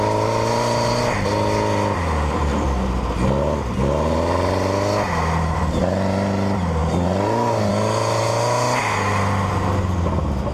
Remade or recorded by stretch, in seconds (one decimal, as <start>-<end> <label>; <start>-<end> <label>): 0.0-10.5 recorded